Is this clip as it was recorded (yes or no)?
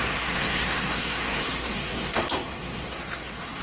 no